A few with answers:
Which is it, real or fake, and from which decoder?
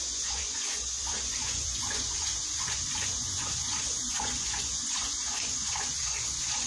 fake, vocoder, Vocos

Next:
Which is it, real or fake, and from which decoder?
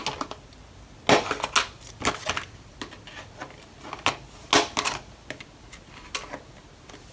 real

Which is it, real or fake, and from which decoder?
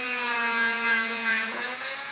fake, vocoder, Vocos